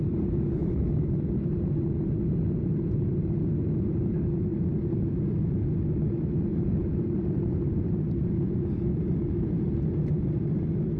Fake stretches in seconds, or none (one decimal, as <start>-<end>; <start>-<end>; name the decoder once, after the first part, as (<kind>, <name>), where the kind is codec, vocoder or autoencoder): 0.6-1.2 (vocoder, BigVGAN v2); 4.5-5.1; 6.5-9.1